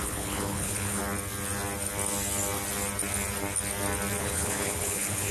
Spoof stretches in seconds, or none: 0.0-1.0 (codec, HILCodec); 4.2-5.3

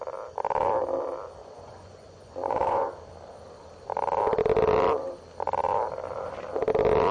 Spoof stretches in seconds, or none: 1.4-2.9 (vocoder, Vocos)

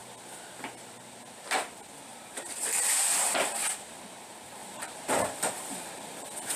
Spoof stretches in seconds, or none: 2.1-4.0 (vocoder, BigVGAN v2); 4.6-6.0

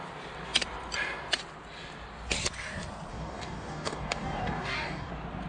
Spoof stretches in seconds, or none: 3.1-5.1 (codec, DAC)